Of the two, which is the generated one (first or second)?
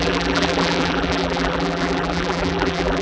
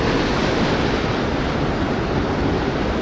first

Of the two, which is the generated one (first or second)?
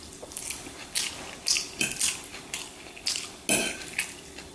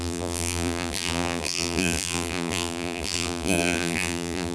second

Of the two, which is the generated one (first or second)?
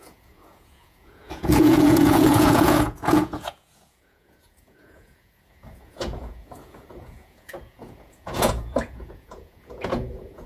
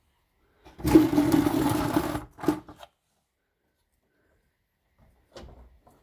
first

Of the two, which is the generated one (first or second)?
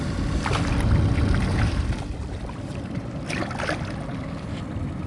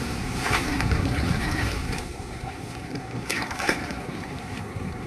second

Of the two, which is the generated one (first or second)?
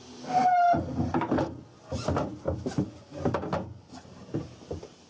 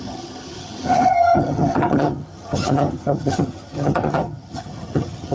second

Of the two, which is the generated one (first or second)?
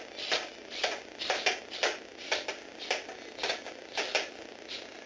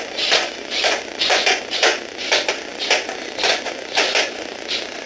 second